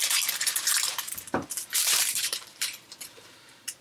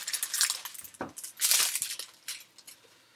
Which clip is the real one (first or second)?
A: second